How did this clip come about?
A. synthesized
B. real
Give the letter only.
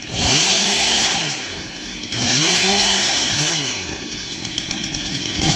A